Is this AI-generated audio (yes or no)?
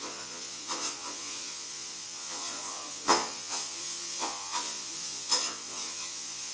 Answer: yes